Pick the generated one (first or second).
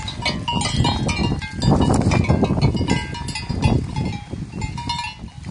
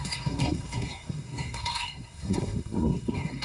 second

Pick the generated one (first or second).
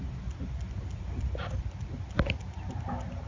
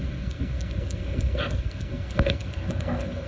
second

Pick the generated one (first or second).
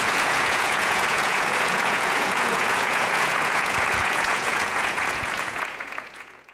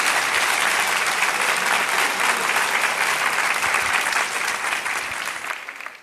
first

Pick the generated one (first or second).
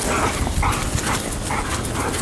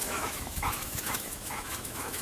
second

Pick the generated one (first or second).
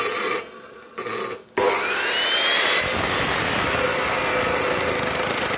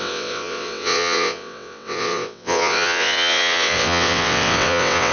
second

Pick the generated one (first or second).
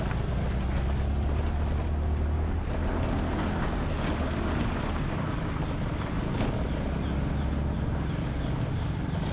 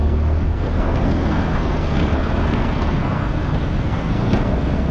second